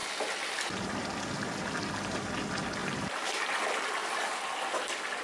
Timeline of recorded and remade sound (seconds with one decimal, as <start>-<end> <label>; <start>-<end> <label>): 0.0-2.8 recorded; 2.8-3.6 remade; 3.6-5.2 recorded